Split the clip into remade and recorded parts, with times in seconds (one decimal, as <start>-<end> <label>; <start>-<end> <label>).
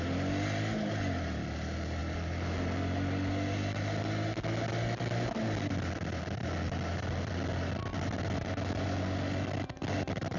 0.0-10.4 recorded